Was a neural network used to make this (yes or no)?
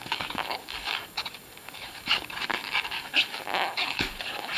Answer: yes